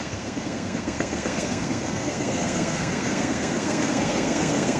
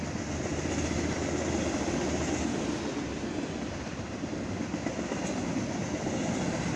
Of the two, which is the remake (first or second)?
first